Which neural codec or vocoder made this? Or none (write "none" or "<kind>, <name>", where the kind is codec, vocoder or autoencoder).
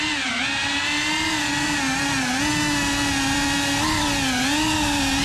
none